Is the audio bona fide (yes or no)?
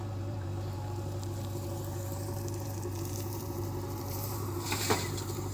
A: no